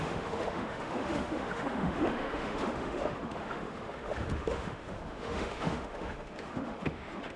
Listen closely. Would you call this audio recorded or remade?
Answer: remade